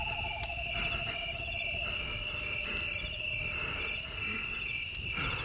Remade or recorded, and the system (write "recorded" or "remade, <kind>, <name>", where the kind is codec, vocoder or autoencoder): recorded